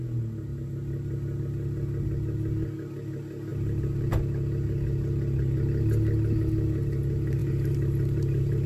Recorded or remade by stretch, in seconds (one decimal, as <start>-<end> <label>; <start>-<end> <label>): 0.0-3.5 recorded; 3.5-4.1 remade; 4.1-7.4 recorded; 7.4-8.7 remade